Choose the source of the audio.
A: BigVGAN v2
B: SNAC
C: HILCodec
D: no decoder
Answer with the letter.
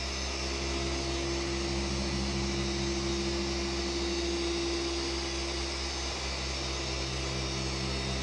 D